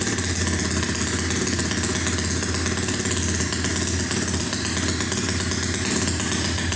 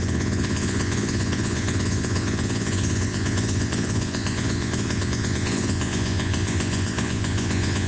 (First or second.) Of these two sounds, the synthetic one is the second